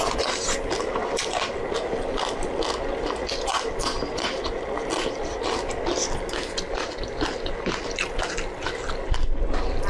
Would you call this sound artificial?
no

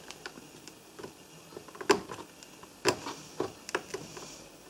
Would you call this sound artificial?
no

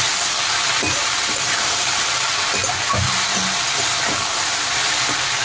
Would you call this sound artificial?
no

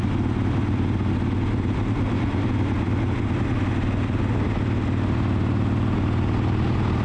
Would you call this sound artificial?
no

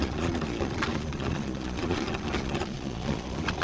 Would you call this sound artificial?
yes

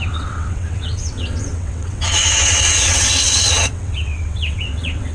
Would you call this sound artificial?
yes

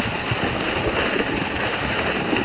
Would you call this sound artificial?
no